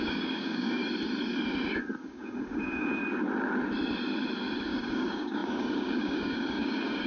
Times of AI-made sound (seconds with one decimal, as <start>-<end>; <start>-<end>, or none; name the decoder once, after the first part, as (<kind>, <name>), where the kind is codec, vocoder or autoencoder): 0.0-0.8 (codec, DAC); 2.0-3.0; 4.7-7.1